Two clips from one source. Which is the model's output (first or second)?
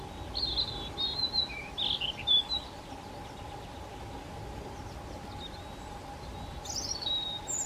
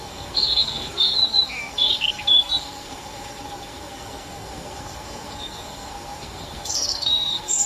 second